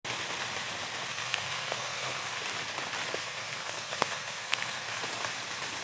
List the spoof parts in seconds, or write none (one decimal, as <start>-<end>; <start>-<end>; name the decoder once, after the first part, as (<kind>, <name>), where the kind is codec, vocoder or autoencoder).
1.1-2.4 (codec, SNAC); 3.2-5.0

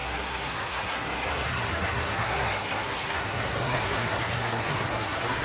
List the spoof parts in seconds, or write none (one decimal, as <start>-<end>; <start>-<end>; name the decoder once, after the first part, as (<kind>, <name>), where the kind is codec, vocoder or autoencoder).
0.0-5.4 (codec, SNAC)

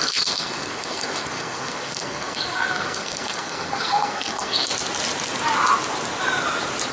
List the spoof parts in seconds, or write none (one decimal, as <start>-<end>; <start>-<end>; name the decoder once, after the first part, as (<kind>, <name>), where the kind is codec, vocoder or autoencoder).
0.0-4.7 (codec, SNAC)